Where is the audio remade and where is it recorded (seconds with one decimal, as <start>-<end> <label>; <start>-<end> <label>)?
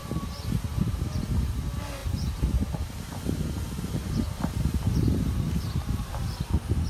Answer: 0.0-1.3 remade; 1.3-2.0 recorded; 2.0-6.1 remade; 6.1-6.9 recorded